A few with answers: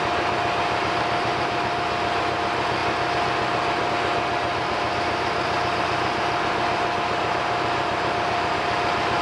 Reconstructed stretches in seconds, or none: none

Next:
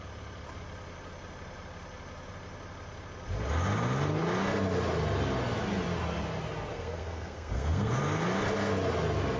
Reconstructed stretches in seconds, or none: 6.7-8.0 (codec, SNAC)

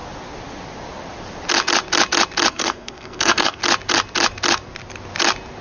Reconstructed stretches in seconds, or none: 2.5-3.6 (codec, SNAC)

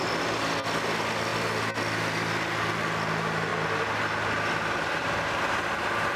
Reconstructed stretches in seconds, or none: none

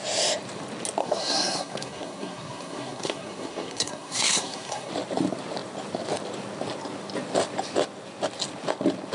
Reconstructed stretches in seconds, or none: 1.0-4.9 (codec, SNAC)

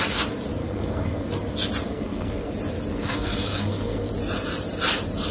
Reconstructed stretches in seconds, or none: 0.6-1.3 (codec, SNAC); 1.9-2.5; 2.9-4.1